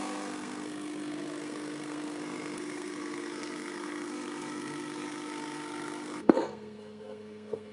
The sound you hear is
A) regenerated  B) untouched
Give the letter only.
A